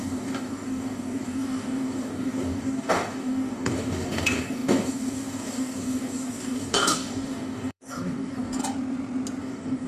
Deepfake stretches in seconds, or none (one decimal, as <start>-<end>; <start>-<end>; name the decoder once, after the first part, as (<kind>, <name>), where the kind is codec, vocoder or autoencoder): 0.0-8.6 (codec, DAC); 9.4-9.9